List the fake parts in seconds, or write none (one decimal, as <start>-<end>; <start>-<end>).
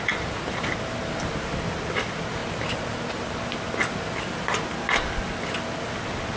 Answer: none